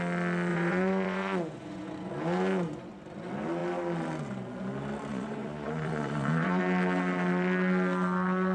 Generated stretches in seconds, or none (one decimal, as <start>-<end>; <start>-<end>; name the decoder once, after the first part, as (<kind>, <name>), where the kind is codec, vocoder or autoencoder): 0.5-2.1 (vocoder, Vocos); 5.1-6.6